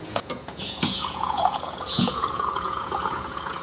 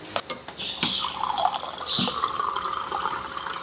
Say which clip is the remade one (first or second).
first